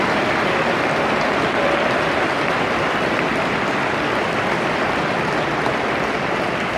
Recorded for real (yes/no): no